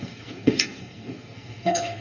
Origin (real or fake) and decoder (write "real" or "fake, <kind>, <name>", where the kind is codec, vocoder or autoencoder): fake, codec, SNAC